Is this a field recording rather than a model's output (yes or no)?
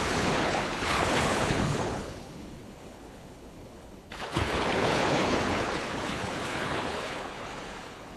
no